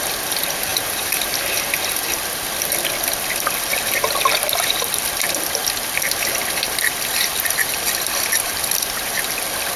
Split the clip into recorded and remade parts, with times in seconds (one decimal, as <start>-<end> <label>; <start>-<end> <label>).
0.0-0.7 recorded; 0.7-1.3 remade; 1.3-9.8 recorded